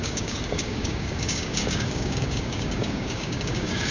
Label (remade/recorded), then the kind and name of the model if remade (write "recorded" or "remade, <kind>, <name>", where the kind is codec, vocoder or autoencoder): remade, codec, DAC